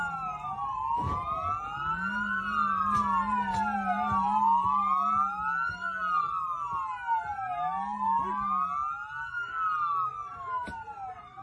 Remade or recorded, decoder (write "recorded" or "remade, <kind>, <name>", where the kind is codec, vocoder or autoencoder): recorded